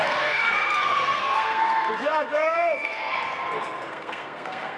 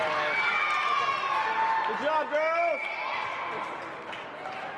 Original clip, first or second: second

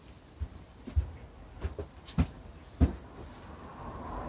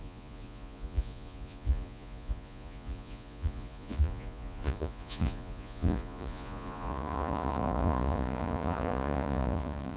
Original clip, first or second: first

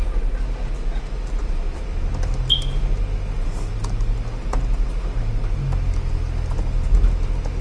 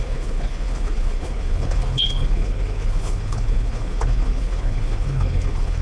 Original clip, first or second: first